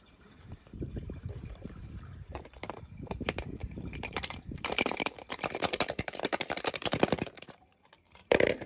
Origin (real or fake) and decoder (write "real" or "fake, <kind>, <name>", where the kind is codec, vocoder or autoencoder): fake, vocoder, BigVGAN v2